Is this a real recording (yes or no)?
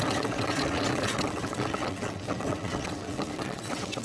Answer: no